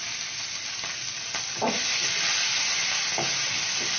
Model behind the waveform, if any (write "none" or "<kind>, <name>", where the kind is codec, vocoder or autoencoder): none